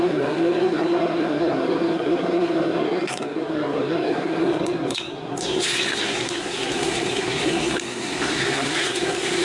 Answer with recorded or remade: remade